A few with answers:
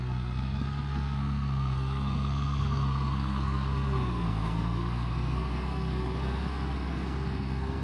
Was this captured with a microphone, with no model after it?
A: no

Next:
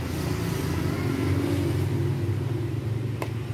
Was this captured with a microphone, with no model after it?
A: yes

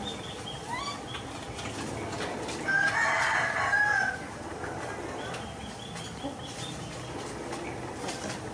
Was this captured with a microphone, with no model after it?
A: yes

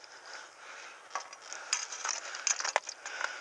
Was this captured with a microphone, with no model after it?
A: yes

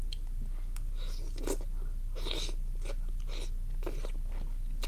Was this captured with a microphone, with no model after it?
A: yes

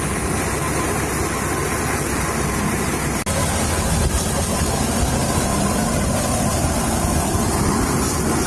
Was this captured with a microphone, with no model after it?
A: yes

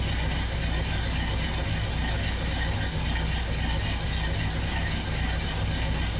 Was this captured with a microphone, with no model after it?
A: yes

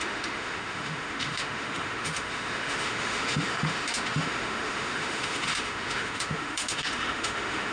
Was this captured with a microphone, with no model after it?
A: no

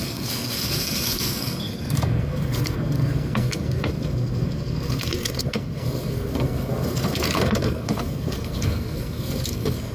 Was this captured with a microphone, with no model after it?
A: no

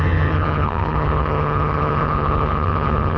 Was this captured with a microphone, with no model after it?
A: no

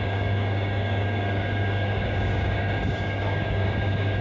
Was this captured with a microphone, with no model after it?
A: no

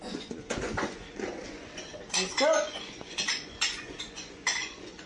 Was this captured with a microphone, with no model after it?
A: no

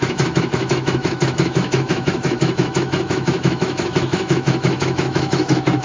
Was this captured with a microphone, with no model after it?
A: no